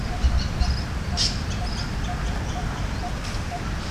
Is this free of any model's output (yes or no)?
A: no